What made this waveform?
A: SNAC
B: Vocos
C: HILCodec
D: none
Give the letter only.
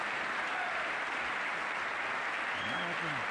D